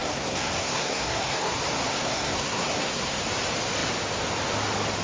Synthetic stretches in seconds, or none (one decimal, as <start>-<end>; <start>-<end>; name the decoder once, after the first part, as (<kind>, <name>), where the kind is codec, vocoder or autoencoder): 0.0-1.5 (codec, SNAC); 1.9-3.2